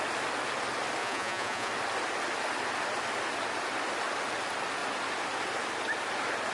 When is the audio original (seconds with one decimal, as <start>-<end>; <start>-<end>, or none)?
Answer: 0.0-1.0; 1.7-6.5